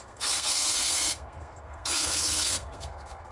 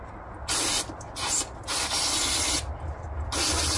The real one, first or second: second